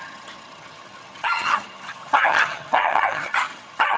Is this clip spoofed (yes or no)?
yes